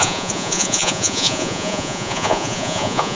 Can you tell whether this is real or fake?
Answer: fake